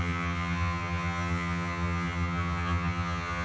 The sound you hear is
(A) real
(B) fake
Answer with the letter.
B